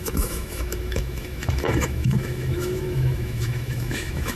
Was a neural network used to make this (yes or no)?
yes